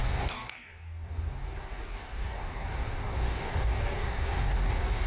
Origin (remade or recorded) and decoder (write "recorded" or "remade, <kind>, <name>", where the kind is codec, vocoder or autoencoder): remade, codec, DAC